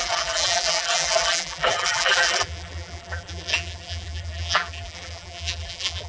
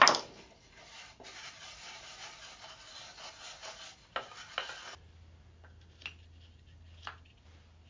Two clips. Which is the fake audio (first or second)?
first